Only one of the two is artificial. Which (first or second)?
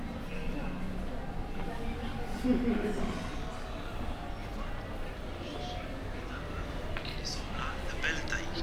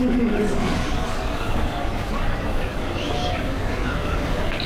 second